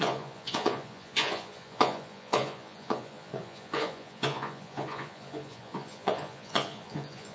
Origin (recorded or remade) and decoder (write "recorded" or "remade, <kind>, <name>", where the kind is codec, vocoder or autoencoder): remade, vocoder, Vocos